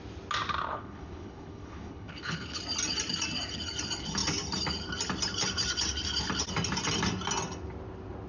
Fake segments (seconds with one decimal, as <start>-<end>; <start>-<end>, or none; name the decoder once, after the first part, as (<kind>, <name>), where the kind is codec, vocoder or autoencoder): 0.7-2.6 (codec, HILCodec)

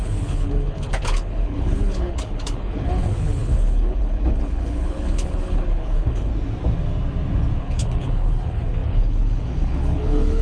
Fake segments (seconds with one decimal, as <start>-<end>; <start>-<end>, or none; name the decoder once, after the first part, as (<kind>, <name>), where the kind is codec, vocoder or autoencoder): 0.0-6.3 (codec, HILCodec); 7.6-10.4

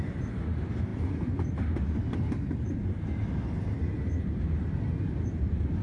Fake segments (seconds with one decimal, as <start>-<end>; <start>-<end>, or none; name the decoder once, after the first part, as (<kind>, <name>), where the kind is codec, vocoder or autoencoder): none

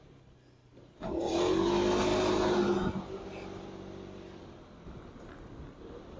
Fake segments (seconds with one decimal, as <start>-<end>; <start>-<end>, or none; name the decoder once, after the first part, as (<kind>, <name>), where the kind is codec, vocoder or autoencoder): none

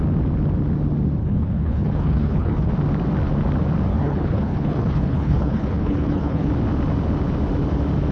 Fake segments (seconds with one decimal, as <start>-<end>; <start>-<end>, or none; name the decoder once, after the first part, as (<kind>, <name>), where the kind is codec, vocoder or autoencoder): 1.2-2.7 (codec, HILCodec); 3.9-6.5